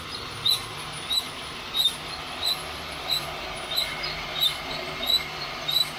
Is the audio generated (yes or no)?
no